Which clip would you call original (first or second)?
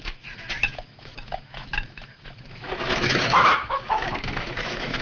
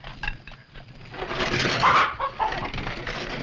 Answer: second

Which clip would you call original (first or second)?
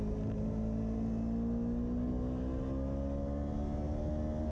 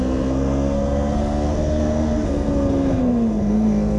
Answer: first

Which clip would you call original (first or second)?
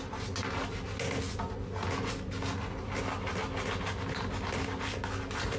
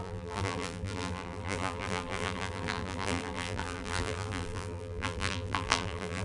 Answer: first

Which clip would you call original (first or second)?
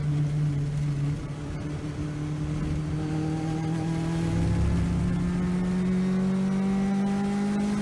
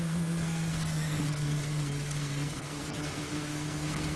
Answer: first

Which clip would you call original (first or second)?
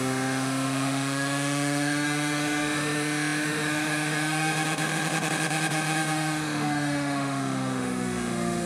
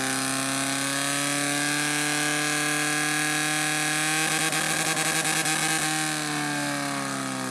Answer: second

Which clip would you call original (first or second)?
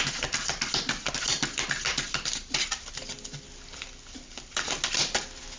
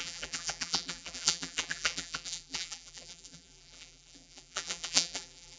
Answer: first